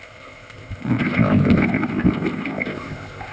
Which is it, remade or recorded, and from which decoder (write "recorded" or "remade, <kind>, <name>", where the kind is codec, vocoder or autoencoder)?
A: remade, codec, ZipCodec